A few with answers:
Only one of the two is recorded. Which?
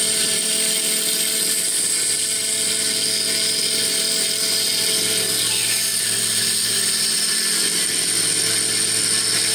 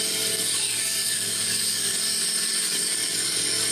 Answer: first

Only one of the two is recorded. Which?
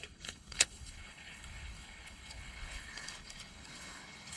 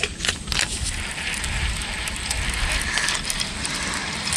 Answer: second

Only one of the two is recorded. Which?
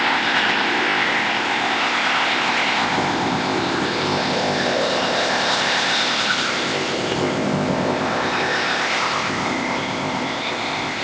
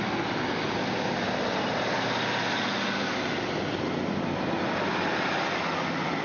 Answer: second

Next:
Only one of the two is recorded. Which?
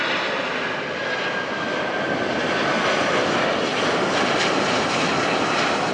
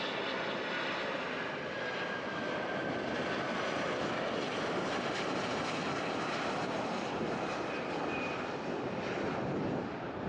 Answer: first